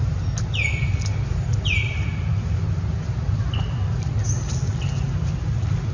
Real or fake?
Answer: real